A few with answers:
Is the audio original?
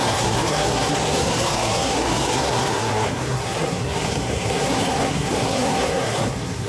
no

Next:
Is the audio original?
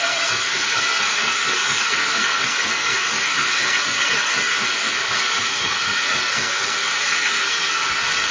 no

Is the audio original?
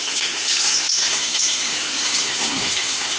no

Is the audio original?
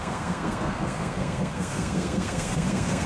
no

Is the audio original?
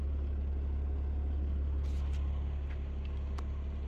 yes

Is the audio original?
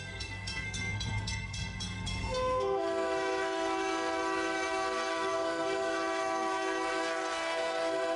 no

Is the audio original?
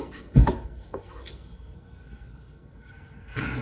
no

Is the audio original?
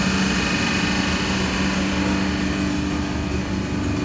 yes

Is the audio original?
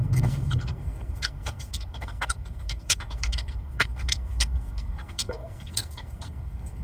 no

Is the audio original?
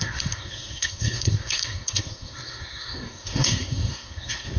no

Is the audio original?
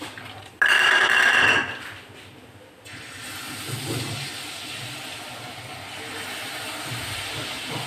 yes